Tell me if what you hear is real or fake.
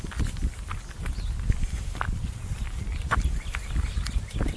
real